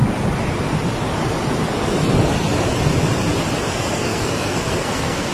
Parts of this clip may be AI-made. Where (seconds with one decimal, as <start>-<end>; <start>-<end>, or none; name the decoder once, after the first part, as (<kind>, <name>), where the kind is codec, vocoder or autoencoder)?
3.7-5.3 (codec, SNAC)